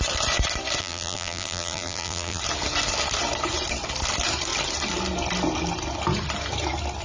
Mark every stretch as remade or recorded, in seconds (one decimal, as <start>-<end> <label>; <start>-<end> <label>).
0.0-0.8 recorded; 0.8-2.4 remade; 2.4-7.0 recorded